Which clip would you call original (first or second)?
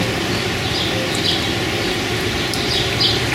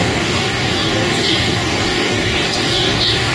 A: first